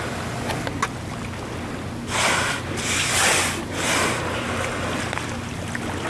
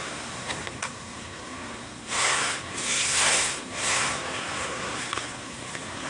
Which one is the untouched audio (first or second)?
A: first